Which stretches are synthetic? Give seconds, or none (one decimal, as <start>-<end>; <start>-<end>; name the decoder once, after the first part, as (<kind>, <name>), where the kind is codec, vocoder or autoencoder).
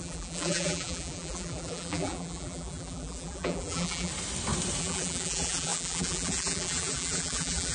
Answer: 0.0-4.1 (vocoder, BigVGAN v2); 4.8-7.7